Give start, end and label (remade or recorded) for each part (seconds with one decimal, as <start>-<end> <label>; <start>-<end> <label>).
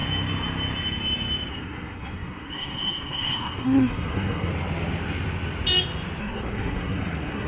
0.0-1.5 recorded; 1.5-4.5 remade; 4.5-6.2 recorded; 6.2-7.5 remade